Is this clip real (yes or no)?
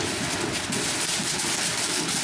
yes